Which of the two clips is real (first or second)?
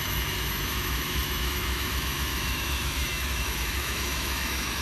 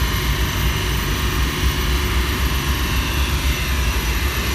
second